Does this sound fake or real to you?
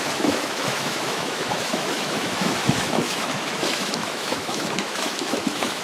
fake